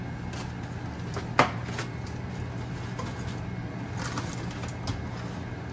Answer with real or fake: real